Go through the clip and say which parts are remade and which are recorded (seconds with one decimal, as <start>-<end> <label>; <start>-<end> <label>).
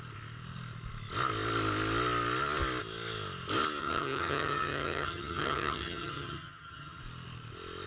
0.0-3.8 recorded; 3.8-7.0 remade; 7.0-7.9 recorded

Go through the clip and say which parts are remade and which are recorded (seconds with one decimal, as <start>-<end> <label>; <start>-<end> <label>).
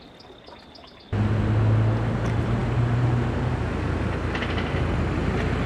0.0-5.7 recorded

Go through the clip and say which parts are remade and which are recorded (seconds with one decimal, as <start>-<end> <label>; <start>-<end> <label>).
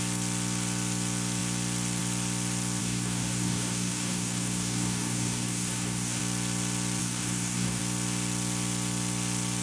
0.0-2.8 recorded; 2.8-6.2 remade; 6.2-7.0 recorded; 7.0-7.8 remade; 7.8-9.6 recorded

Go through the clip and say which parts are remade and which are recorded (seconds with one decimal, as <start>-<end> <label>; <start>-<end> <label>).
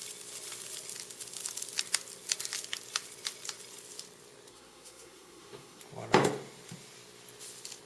0.0-4.5 recorded; 4.5-5.8 remade; 5.8-7.9 recorded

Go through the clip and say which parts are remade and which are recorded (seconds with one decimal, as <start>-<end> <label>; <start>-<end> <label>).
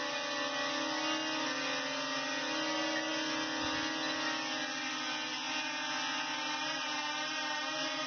0.0-8.1 recorded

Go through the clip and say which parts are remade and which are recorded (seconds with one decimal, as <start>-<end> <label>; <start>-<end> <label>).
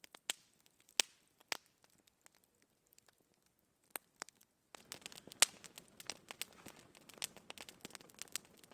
0.0-8.7 recorded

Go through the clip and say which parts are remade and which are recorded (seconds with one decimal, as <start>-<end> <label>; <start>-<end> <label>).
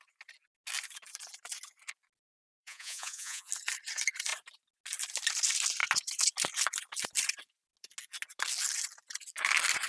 0.0-2.5 recorded; 2.5-3.5 remade; 3.5-9.9 recorded